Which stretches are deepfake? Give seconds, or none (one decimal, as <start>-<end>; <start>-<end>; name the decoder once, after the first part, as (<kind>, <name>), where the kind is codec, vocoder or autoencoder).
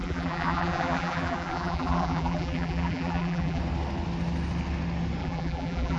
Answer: 0.0-3.6 (vocoder, BigVGAN v2); 5.2-6.0